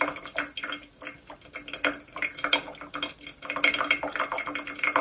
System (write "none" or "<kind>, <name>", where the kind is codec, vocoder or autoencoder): none